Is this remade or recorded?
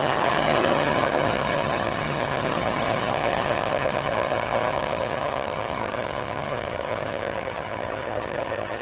remade